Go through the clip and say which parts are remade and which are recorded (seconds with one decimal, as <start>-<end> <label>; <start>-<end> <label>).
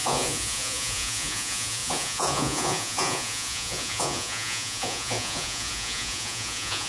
0.0-6.9 remade